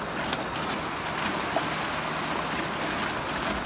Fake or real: real